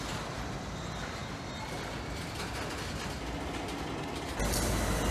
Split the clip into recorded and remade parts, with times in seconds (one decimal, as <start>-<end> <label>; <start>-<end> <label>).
0.0-5.1 recorded